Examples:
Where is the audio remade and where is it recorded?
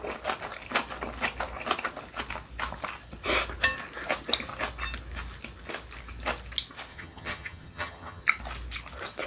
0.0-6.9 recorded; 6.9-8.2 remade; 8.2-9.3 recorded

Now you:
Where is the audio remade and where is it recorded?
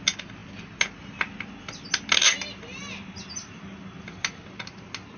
0.0-5.2 recorded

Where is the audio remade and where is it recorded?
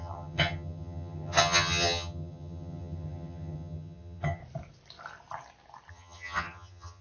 0.0-4.4 remade; 4.4-5.9 recorded; 5.9-7.0 remade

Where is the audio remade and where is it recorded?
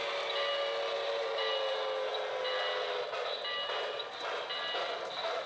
0.0-5.5 recorded